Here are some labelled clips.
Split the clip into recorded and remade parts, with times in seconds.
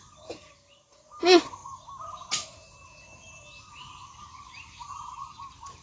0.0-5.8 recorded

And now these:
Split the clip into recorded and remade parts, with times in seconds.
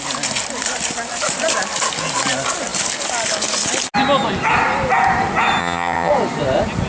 0.0-5.6 recorded; 5.6-6.1 remade; 6.1-6.9 recorded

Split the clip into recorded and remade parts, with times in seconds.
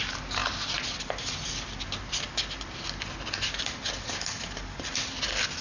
0.0-5.6 recorded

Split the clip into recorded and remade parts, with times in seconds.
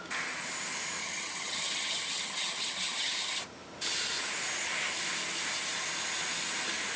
0.0-1.0 recorded; 1.0-3.4 remade; 3.4-7.0 recorded